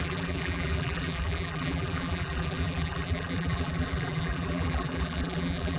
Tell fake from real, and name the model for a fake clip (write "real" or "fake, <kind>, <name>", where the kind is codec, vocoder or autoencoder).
fake, vocoder, BigVGAN v2